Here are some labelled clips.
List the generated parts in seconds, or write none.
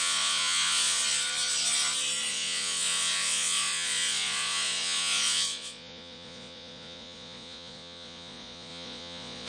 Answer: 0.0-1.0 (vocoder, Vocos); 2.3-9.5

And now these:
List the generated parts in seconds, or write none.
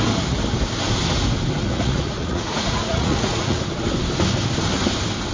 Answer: 1.6-3.6 (vocoder, Vocos)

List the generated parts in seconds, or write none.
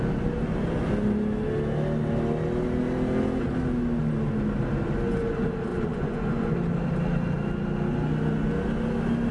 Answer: 5.7-6.5 (vocoder, Vocos)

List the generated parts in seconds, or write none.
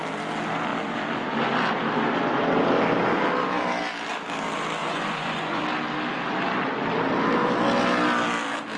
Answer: 4.8-5.6 (vocoder, Vocos)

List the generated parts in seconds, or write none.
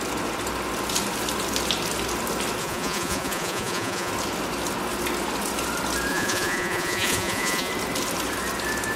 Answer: 2.6-4.1 (vocoder, Vocos); 6.1-7.7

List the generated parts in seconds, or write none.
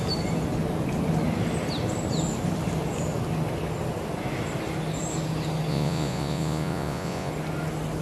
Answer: 5.7-7.3 (vocoder, Vocos)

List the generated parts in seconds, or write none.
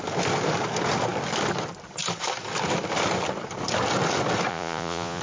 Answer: 4.5-5.2 (vocoder, Vocos)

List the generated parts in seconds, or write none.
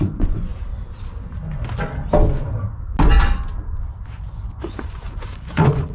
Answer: 0.0-0.5 (vocoder, Vocos); 4.0-5.9